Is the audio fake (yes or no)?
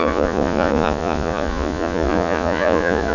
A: yes